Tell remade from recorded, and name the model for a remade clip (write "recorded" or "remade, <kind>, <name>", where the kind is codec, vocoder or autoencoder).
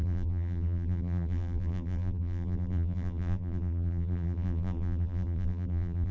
remade, vocoder, BigVGAN v2